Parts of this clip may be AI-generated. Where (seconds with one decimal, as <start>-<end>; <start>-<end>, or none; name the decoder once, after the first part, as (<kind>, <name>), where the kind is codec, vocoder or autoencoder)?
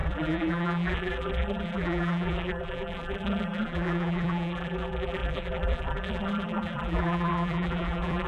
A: 0.0-8.3 (vocoder, BigVGAN v2)